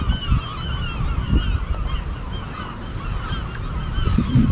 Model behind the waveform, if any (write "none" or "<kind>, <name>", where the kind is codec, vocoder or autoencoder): none